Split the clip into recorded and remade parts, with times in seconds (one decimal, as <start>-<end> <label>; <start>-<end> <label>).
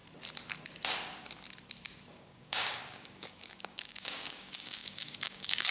0.0-2.2 recorded; 2.2-5.7 remade